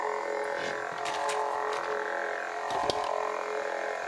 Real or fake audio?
real